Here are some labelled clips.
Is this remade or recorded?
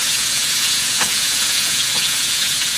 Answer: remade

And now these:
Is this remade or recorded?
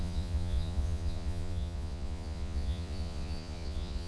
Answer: remade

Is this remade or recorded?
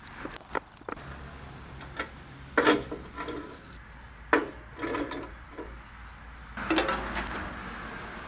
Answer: recorded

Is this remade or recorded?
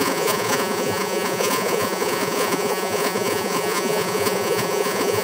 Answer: remade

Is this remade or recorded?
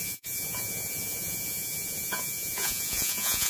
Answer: remade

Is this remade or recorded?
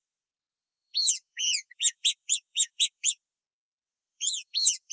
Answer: remade